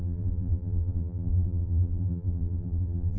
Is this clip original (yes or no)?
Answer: no